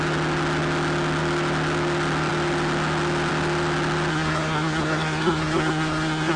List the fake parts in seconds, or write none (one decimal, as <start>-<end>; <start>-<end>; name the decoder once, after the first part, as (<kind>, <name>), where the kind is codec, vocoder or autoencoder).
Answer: 4.1-6.4 (codec, SNAC)

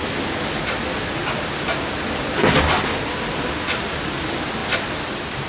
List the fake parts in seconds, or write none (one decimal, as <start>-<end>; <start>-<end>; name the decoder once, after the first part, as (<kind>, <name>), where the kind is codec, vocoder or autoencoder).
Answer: 4.6-5.5 (vocoder, BigVGAN v2)

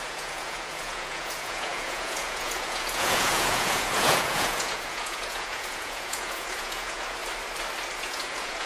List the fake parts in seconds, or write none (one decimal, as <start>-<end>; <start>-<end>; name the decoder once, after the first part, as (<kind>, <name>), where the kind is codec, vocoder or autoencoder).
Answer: 0.0-7.2 (vocoder, Vocos); 8.0-8.7

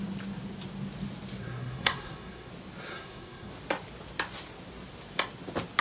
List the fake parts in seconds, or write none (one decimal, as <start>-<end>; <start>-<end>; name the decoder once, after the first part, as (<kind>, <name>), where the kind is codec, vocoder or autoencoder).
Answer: 1.4-2.5 (codec, SNAC); 2.9-3.5

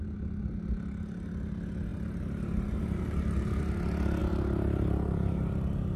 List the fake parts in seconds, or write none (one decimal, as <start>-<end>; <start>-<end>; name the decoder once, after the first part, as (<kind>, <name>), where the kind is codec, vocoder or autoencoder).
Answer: 1.9-3.6 (vocoder, BigVGAN v2); 4.2-6.0